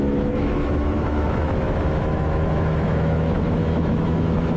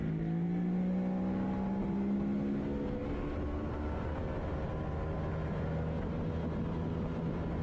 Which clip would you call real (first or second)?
second